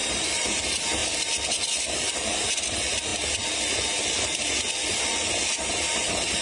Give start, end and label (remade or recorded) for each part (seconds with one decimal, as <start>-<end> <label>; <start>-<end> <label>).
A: 0.0-0.6 remade; 0.6-6.4 recorded